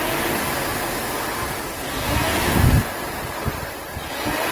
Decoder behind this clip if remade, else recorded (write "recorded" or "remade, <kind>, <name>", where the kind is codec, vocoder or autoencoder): recorded